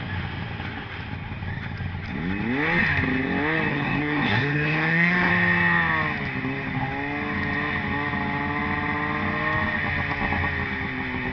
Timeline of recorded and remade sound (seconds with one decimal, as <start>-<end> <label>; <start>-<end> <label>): 0.0-3.7 recorded; 3.7-5.3 remade; 5.3-11.3 recorded